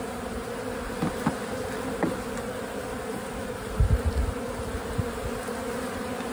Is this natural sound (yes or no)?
yes